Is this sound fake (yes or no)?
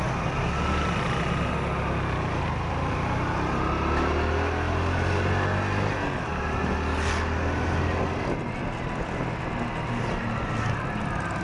no